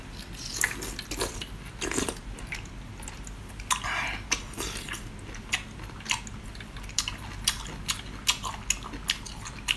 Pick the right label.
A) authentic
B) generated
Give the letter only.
A